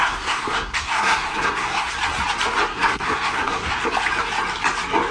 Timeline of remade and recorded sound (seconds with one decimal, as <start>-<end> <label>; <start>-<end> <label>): 0.0-1.9 remade; 1.9-2.7 recorded; 2.7-3.9 remade; 3.9-5.1 recorded